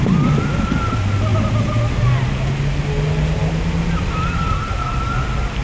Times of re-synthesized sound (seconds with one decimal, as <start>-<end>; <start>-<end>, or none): none